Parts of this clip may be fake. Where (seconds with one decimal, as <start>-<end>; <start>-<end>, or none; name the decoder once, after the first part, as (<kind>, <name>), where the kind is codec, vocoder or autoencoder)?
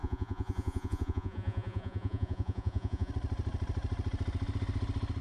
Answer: 0.0-3.1 (vocoder, Vocos)